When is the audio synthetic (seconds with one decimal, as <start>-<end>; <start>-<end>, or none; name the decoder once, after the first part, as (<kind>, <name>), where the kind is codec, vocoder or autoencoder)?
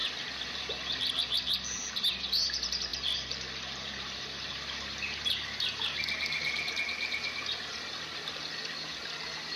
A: 2.9-6.7 (vocoder, BigVGAN v2)